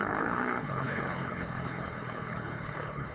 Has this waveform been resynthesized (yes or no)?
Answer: yes